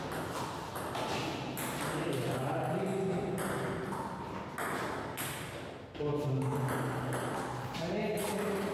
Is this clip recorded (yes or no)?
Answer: yes